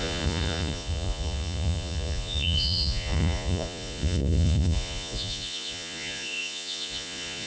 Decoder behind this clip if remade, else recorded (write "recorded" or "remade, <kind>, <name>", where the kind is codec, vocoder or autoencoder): remade, vocoder, Vocos